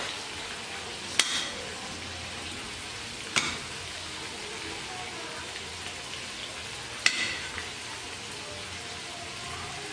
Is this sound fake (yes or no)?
no